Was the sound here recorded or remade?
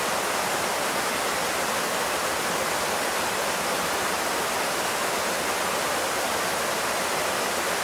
recorded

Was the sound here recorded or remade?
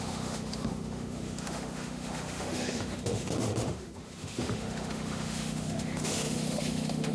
remade